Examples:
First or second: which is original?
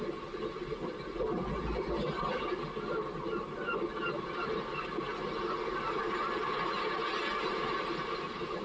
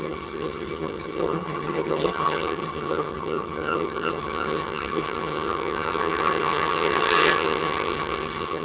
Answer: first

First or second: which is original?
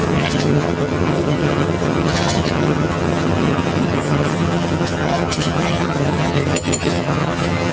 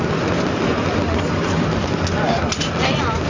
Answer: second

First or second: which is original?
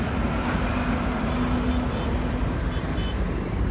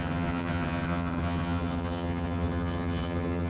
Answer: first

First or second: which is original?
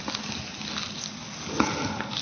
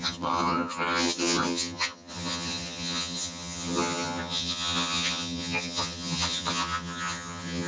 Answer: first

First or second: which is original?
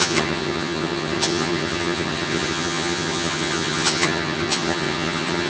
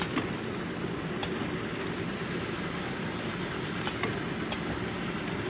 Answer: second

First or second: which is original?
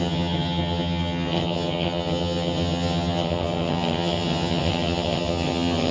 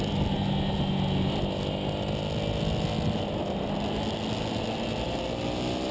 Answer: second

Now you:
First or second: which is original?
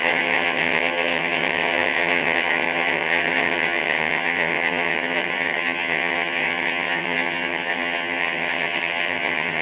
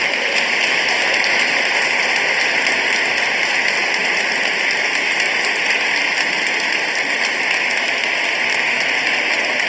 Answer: second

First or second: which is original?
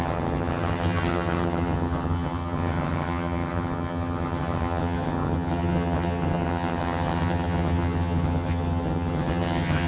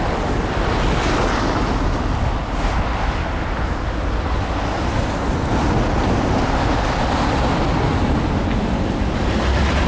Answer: second